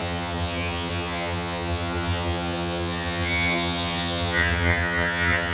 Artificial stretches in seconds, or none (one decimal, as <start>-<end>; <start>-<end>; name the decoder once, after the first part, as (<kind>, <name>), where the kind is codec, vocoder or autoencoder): 0.0-5.5 (vocoder, HiFi-GAN)